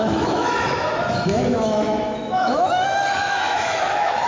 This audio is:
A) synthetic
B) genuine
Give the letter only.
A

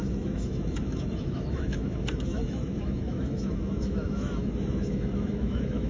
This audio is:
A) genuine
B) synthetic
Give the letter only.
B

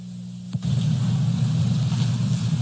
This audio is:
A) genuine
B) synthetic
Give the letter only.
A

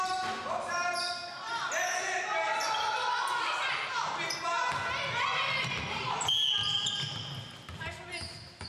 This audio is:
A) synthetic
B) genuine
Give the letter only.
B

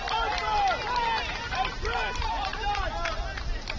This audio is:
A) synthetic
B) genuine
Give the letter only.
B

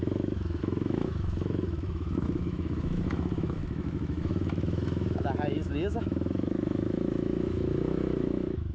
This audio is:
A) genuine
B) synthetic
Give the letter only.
B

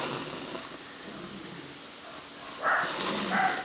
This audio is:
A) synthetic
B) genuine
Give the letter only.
B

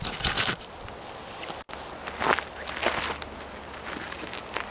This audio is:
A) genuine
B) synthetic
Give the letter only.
A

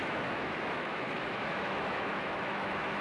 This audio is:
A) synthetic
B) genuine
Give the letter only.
A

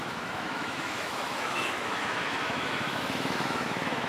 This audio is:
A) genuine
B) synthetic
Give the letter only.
B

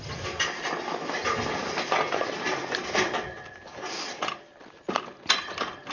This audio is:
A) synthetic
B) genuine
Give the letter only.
B